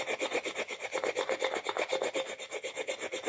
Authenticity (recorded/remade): recorded